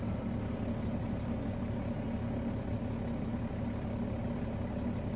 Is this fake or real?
real